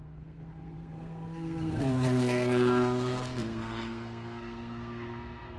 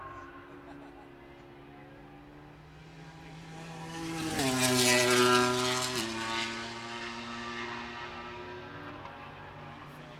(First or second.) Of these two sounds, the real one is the second